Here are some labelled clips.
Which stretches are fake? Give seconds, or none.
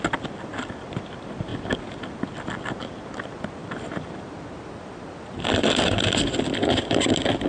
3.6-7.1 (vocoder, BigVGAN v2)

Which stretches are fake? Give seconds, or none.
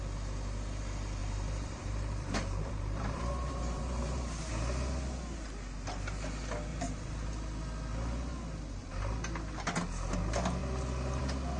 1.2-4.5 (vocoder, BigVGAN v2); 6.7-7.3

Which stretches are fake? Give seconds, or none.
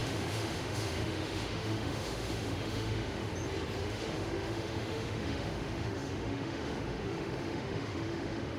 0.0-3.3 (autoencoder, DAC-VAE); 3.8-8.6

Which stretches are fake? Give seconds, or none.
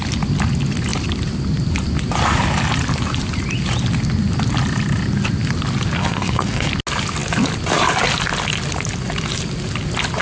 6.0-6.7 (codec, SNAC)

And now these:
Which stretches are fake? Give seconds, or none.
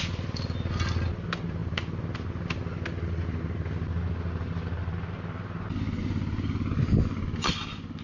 6.0-6.6 (vocoder, BigVGAN v2)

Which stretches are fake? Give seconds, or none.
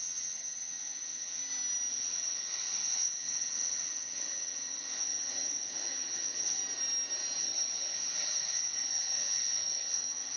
0.0-1.4 (vocoder, HiFi-GAN); 1.9-6.6; 7.4-10.4